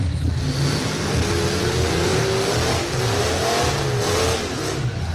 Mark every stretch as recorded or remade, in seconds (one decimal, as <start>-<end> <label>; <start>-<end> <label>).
0.0-5.1 recorded